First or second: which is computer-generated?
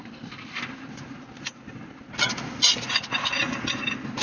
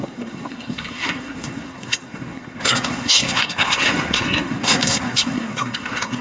second